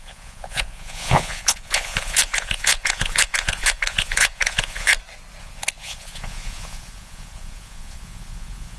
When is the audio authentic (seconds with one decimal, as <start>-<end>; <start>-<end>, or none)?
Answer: 4.9-5.4